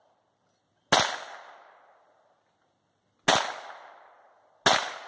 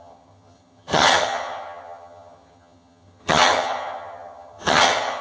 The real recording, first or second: first